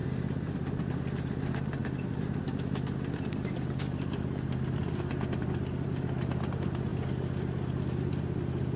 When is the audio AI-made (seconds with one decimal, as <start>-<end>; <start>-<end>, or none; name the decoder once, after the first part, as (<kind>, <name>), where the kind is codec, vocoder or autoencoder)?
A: none